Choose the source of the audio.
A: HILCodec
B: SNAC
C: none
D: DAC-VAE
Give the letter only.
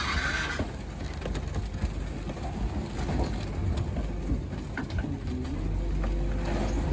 C